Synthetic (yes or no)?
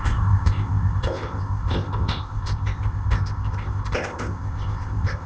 yes